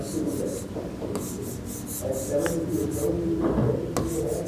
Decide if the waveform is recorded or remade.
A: recorded